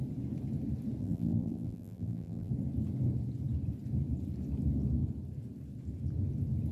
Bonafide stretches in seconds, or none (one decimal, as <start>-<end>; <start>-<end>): 0.0-1.0; 2.5-6.7